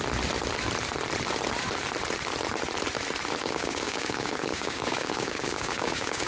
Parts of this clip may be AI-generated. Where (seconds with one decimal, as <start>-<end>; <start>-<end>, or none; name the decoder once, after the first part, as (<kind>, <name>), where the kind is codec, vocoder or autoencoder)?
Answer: 3.4-6.3 (codec, DAC)